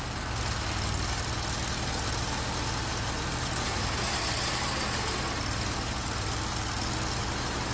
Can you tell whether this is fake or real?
real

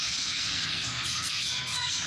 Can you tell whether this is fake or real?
fake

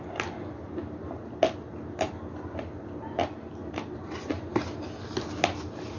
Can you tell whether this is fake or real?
real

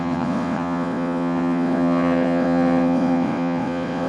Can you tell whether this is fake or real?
fake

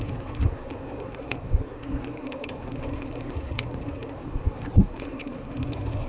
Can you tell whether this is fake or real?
fake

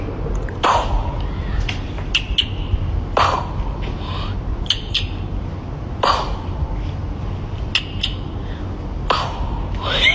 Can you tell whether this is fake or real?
real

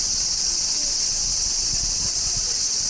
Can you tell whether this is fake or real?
fake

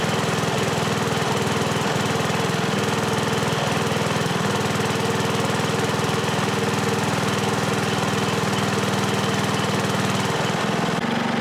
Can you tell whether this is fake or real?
real